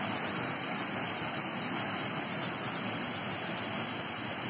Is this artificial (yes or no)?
no